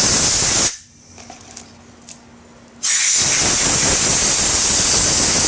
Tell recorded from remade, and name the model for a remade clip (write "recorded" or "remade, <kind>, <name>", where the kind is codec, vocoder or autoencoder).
recorded